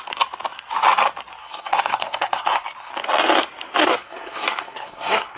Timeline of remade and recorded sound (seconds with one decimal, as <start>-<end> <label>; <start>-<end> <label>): 0.0-1.4 recorded; 1.4-2.9 remade; 2.9-3.8 recorded; 3.8-5.4 remade

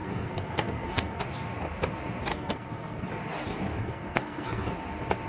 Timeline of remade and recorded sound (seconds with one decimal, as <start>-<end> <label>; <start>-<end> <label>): 0.0-1.2 remade; 1.2-2.3 recorded; 2.3-3.1 remade; 3.1-3.8 recorded; 3.8-4.7 remade; 4.7-5.3 recorded